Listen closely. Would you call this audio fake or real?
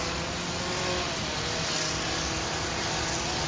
real